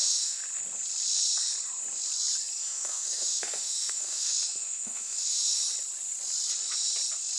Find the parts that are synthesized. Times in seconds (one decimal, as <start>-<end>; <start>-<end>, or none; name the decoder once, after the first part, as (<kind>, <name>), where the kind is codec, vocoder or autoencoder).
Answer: 0.0-0.4 (autoencoder, DAC-VAE); 2.6-5.6

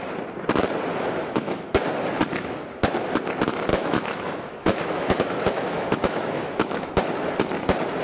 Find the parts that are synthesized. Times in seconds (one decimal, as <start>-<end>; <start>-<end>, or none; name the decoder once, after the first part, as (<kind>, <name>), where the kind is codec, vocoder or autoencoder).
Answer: 1.2-1.7 (autoencoder, DAC-VAE); 3.7-6.9

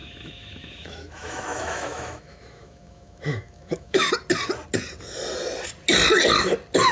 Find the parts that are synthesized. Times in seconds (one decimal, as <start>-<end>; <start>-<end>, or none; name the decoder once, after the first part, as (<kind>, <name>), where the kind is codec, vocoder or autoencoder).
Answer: 0.0-4.1 (autoencoder, DAC-VAE)

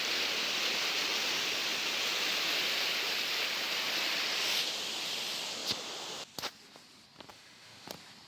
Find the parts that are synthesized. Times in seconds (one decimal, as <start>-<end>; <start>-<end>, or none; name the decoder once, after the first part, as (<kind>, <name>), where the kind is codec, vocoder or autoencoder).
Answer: 7.3-7.9 (autoencoder, DAC-VAE)

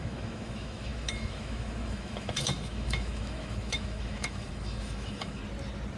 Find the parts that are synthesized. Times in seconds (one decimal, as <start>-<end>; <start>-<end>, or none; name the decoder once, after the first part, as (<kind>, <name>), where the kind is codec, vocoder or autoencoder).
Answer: 0.0-5.4 (autoencoder, DAC-VAE)

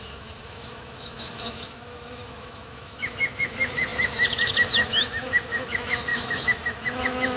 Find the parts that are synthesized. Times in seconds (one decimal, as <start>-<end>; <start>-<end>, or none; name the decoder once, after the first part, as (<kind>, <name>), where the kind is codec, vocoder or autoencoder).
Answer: 0.0-7.4 (autoencoder, DAC-VAE)

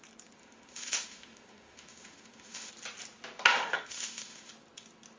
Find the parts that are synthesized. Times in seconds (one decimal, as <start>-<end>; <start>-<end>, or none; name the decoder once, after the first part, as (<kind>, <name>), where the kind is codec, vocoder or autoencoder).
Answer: 0.4-2.7 (autoencoder, DAC-VAE); 3.5-4.5

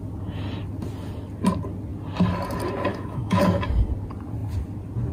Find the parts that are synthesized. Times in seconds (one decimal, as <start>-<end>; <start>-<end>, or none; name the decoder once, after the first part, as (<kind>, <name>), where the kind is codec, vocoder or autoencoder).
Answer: 2.9-3.4 (autoencoder, DAC-VAE)